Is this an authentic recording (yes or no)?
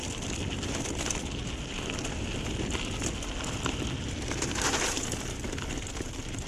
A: yes